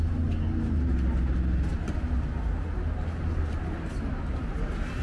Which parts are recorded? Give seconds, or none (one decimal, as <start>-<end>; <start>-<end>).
0.0-5.0